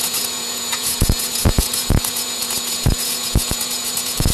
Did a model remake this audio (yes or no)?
yes